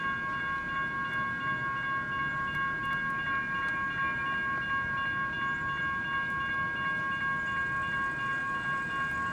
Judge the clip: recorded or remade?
recorded